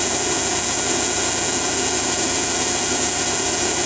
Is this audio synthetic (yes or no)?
no